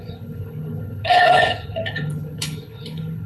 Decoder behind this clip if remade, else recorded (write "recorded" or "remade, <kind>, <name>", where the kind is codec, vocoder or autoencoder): remade, codec, HILCodec